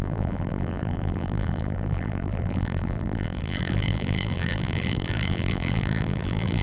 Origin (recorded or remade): remade